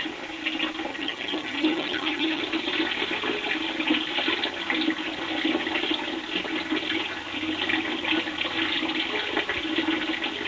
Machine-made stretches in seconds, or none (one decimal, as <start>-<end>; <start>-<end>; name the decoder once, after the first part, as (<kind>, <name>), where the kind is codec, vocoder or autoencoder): 0.9-2.4 (vocoder, HiFi-GAN)